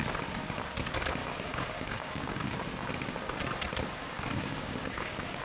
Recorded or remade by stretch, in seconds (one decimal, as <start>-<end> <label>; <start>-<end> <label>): 0.0-1.2 recorded; 1.2-2.9 remade; 2.9-4.0 recorded; 4.0-5.4 remade